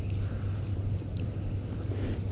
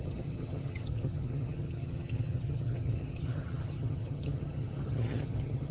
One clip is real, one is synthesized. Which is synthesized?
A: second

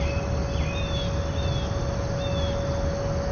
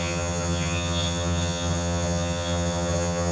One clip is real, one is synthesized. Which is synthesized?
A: second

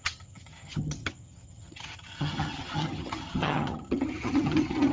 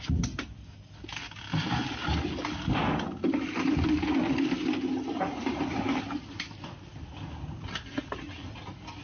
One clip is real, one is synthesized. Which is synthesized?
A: first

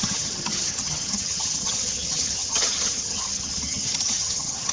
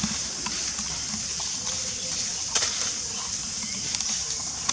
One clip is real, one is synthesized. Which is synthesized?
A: first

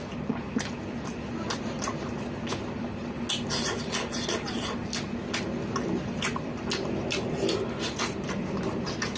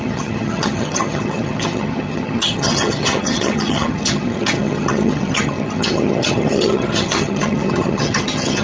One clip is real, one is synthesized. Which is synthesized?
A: second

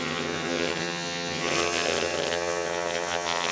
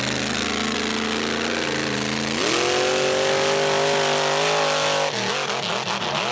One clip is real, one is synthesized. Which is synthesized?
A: first